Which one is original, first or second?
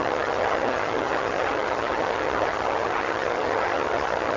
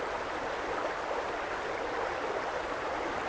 second